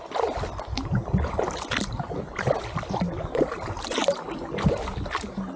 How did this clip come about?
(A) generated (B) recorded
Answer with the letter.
B